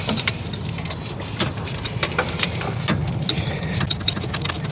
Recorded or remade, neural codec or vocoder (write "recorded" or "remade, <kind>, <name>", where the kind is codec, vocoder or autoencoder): recorded